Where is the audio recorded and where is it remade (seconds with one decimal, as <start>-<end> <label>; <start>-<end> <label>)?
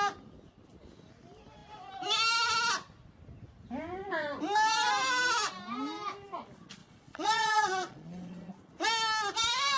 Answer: 0.0-6.8 recorded; 6.8-8.5 remade; 8.5-9.8 recorded